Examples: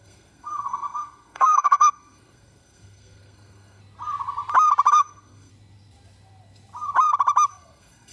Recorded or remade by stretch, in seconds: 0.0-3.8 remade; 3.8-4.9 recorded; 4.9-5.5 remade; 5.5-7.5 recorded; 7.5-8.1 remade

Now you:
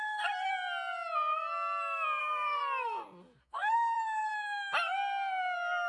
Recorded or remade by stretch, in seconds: 0.0-0.5 remade; 0.5-2.2 recorded; 2.2-2.6 remade; 2.6-3.4 recorded; 3.4-4.3 remade; 4.3-5.9 recorded

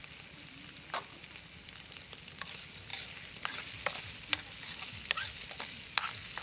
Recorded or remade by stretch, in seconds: 0.0-6.4 recorded

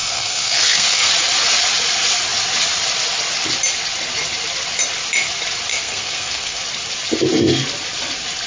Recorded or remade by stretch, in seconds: 0.0-1.1 remade; 1.1-5.7 recorded; 5.7-6.6 remade; 6.6-8.5 recorded

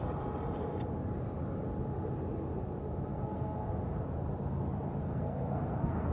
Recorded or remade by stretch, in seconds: 0.0-3.1 recorded; 3.1-3.7 remade; 3.7-5.0 recorded; 5.0-6.1 remade

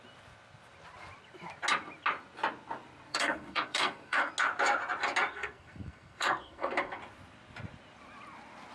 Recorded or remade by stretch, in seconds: 0.0-3.1 recorded; 3.1-4.3 remade; 4.3-5.3 recorded; 5.3-7.0 remade; 7.0-8.7 recorded

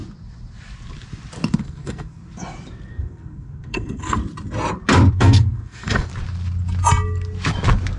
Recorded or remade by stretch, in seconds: 0.0-1.6 recorded; 1.6-2.2 remade; 2.2-2.9 recorded; 2.9-4.2 remade; 4.2-5.1 recorded; 5.1-6.1 remade; 6.1-8.0 recorded

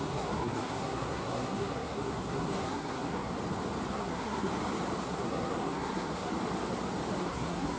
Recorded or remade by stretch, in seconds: 0.0-3.3 remade; 3.3-3.9 recorded; 3.9-4.5 remade; 4.5-5.0 recorded; 5.0-6.3 remade; 6.3-7.2 recorded; 7.2-7.8 remade